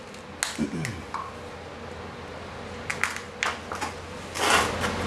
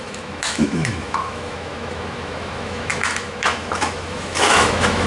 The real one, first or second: first